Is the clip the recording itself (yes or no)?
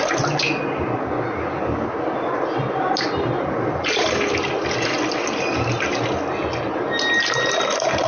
yes